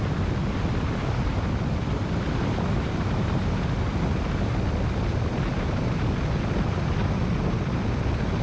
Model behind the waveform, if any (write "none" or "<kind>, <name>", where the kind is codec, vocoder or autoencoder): none